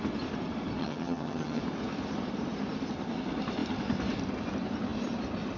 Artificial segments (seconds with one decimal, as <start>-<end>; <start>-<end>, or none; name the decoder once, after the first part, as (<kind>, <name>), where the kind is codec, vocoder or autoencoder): 0.8-1.6 (vocoder, HiFi-GAN)